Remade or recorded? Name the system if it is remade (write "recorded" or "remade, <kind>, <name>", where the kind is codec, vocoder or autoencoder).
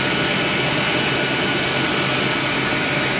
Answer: recorded